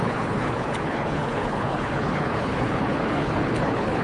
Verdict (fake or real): fake